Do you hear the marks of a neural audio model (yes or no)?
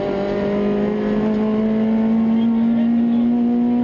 no